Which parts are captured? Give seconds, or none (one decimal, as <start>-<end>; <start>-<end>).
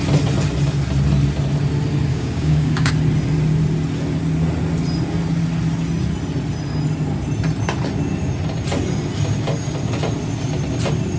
0.0-2.1; 2.9-11.2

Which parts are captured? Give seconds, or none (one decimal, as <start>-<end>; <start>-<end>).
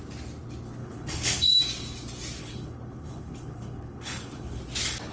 0.0-0.8; 1.6-2.4; 4.6-5.1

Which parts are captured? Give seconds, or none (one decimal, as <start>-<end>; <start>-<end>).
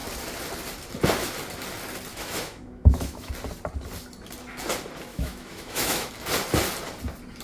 0.0-2.1; 3.3-5.1; 6.1-7.4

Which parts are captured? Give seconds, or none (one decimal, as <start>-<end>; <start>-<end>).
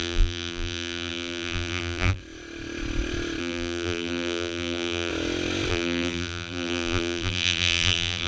2.2-3.4; 5.1-5.7